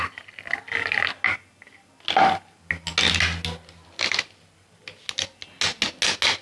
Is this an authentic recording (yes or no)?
yes